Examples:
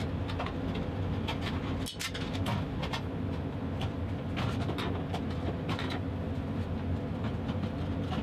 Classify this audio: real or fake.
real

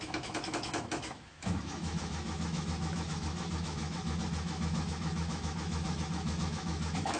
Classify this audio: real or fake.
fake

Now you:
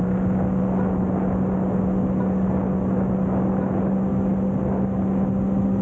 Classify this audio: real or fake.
real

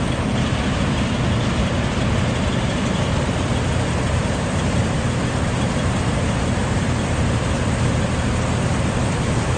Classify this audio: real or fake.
fake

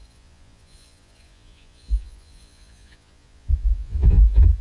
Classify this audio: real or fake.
fake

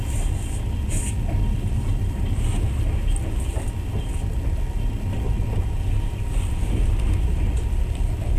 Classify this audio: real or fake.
real